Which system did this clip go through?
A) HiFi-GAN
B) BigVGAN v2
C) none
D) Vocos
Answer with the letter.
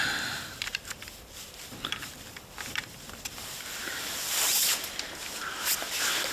B